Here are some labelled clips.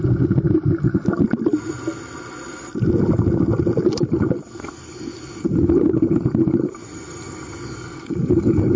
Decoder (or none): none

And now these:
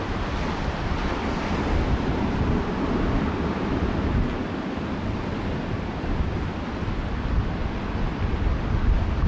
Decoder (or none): none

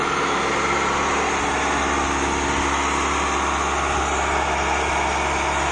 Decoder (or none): none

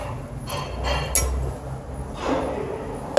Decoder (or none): none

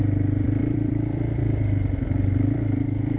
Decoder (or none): vocoder, BigVGAN v2